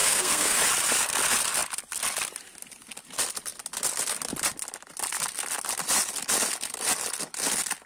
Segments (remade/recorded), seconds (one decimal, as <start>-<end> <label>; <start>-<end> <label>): 0.0-0.6 remade; 0.6-7.9 recorded